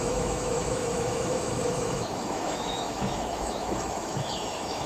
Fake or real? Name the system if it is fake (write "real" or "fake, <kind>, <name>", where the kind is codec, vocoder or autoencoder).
fake, autoencoder, DAC-VAE